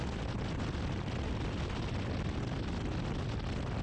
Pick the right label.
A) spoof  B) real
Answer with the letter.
B